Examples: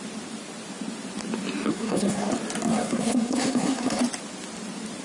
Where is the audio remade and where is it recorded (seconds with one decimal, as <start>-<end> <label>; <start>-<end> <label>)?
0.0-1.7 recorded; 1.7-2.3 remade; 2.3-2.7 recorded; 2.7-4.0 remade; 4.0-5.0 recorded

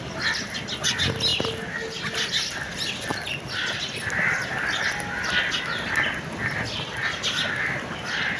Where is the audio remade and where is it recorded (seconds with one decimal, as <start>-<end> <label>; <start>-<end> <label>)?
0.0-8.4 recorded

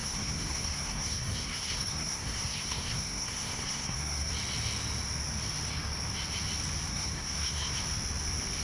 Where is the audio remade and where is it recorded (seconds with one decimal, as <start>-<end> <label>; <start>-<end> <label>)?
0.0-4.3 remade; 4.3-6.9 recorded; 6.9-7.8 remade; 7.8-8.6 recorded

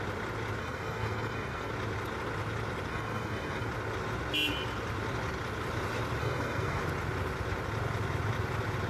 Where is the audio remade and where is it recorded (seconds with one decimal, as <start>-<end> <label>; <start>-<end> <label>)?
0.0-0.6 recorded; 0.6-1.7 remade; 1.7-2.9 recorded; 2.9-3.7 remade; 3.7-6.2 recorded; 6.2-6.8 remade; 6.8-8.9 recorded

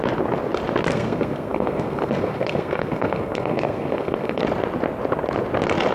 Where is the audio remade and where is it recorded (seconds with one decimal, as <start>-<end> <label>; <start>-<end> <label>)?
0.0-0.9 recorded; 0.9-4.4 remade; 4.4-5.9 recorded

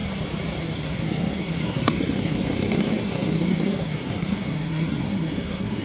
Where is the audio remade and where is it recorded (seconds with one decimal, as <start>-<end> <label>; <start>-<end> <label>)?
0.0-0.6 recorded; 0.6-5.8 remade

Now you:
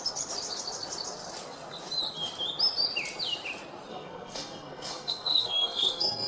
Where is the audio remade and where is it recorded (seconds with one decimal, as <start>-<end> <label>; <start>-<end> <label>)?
0.0-3.9 recorded; 3.9-6.3 remade

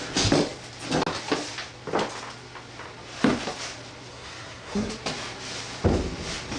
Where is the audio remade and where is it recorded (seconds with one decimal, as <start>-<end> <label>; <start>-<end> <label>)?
0.0-4.1 recorded; 4.1-4.9 remade; 4.9-6.6 recorded